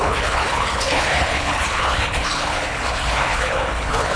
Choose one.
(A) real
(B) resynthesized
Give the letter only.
B